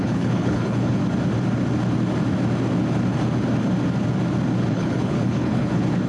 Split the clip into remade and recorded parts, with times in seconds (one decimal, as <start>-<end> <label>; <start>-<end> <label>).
0.0-1.0 remade; 1.0-4.7 recorded; 4.7-6.1 remade